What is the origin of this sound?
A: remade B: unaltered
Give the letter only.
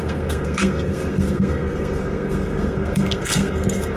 A